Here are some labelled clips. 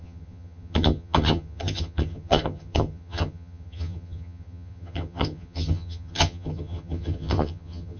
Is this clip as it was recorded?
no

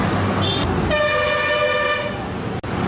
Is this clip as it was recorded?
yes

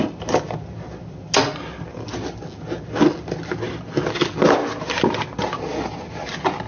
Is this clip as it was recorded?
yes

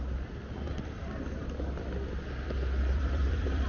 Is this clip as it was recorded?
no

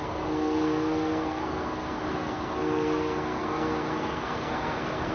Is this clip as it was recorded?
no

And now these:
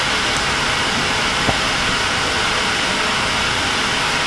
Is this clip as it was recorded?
yes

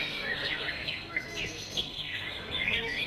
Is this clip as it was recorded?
no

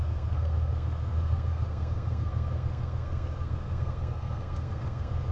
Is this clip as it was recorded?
no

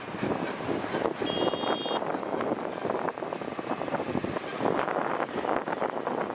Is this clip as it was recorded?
yes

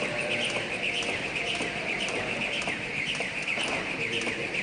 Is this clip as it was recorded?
yes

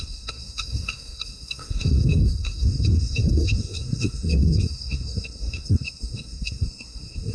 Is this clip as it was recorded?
no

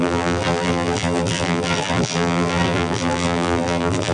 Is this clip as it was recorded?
no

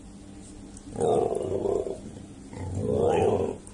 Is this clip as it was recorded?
yes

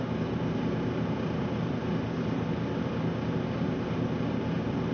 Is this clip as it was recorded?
yes